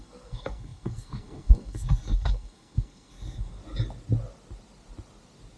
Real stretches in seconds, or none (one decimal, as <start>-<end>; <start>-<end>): 3.6-5.6